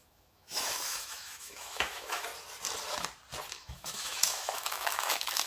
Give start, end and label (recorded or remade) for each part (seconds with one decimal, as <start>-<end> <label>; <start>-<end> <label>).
0.0-2.3 remade; 2.3-3.5 recorded; 3.5-5.5 remade